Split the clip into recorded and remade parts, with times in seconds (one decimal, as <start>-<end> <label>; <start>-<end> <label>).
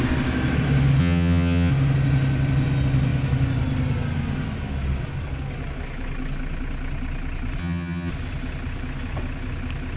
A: 0.0-1.0 recorded; 1.0-1.7 remade; 1.7-7.6 recorded; 7.6-8.1 remade; 8.1-10.0 recorded